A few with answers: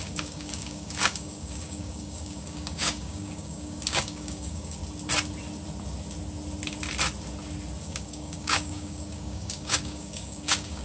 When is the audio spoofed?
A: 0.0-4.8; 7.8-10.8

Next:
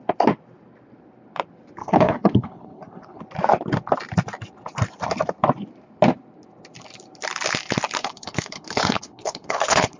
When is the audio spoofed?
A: 1.8-3.2; 8.0-10.0

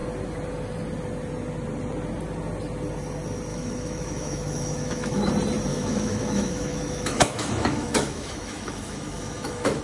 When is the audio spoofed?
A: 3.5-5.3; 5.7-9.8